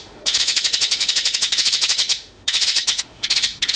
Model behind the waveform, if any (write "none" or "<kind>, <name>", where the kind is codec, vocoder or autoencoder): autoencoder, DAC-VAE